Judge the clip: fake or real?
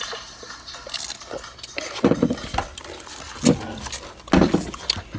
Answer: real